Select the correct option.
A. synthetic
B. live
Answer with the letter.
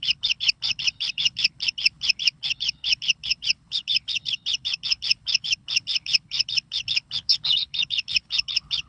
A